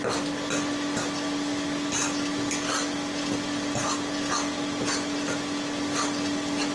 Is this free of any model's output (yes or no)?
yes